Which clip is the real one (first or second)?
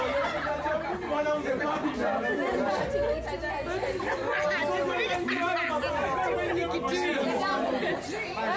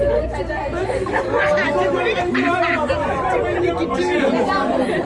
first